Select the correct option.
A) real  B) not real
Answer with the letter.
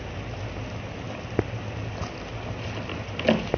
A